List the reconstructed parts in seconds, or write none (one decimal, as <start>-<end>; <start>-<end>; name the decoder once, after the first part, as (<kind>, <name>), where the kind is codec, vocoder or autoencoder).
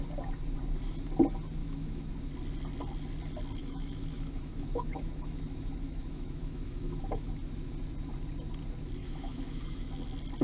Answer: 1.6-2.1 (autoencoder, DAC-VAE); 3.6-7.3; 9.0-9.9